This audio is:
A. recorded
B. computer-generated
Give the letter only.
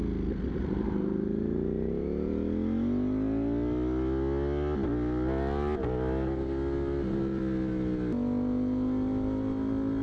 A